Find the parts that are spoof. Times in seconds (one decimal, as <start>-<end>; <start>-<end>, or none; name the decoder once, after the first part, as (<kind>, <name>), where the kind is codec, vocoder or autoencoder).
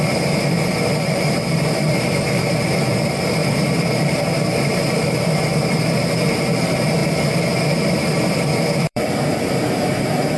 0.0-7.0 (vocoder, BigVGAN v2); 8.8-10.4